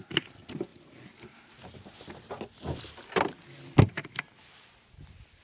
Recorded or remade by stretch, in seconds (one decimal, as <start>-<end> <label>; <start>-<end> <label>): 0.0-5.4 recorded